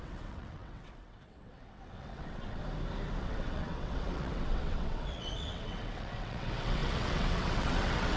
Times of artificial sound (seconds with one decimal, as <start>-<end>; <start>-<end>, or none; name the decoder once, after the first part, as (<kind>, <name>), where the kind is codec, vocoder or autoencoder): 0.0-2.6 (vocoder, WaveNeXt); 3.2-8.2